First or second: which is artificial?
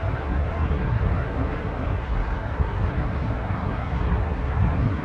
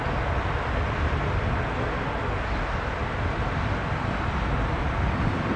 first